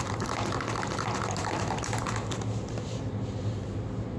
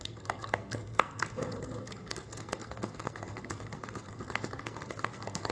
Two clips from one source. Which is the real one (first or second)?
first